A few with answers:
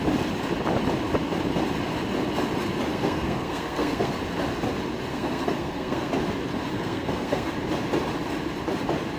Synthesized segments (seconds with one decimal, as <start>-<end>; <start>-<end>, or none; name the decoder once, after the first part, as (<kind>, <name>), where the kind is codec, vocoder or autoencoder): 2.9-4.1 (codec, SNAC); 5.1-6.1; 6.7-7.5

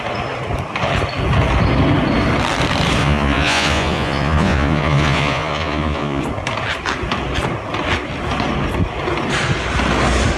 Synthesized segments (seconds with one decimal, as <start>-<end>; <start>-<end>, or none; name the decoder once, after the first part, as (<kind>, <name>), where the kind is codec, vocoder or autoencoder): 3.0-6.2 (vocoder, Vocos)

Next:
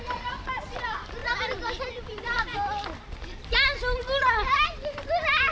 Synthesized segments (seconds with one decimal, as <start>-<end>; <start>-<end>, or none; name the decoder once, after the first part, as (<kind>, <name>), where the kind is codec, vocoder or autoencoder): 1.2-3.4 (vocoder, BigVGAN v2)